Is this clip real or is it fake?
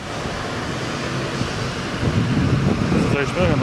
real